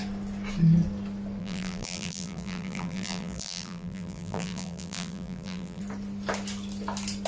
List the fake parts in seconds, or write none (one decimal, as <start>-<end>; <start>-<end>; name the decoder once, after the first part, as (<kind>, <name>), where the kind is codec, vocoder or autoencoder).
1.4-5.8 (vocoder, BigVGAN v2)